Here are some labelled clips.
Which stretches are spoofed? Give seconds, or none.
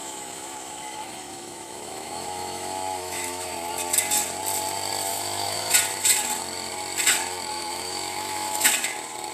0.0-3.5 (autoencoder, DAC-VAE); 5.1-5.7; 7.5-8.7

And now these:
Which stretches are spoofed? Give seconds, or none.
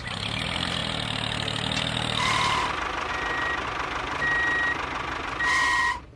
none